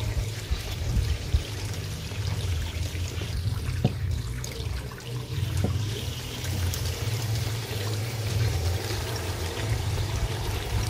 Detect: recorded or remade remade